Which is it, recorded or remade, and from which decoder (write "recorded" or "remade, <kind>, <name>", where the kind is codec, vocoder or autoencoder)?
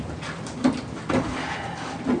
recorded